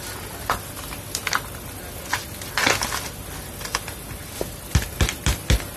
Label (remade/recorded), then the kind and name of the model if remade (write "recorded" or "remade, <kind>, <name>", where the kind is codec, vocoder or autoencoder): recorded